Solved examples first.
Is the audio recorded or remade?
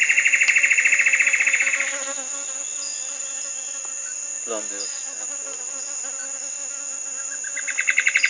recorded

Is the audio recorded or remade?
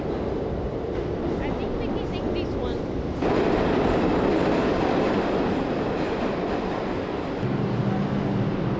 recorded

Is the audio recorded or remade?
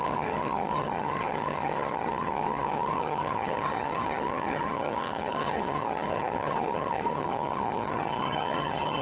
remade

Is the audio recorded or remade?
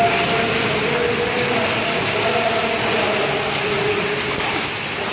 recorded